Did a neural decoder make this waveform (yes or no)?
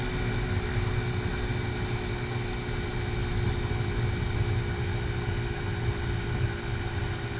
no